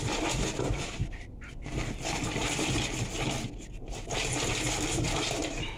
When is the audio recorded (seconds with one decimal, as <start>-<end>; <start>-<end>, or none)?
1.0-4.5